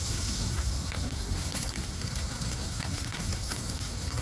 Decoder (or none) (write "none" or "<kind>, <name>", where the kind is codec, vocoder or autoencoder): codec, SNAC